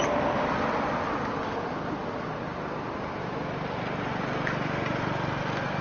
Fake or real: real